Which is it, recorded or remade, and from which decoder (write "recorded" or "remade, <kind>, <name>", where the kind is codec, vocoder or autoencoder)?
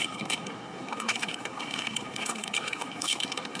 remade, codec, SNAC